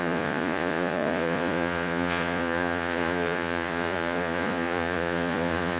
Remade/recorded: remade